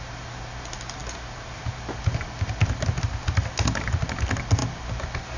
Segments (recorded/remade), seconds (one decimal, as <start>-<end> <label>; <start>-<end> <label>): 0.0-5.4 recorded